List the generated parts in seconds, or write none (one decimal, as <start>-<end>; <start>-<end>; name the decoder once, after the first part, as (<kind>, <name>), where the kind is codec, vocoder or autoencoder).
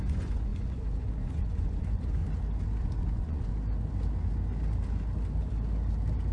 0.0-2.2 (vocoder, Vocos); 2.8-3.5